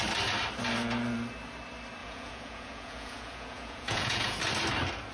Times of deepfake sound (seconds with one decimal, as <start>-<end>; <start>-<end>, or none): 2.0-4.4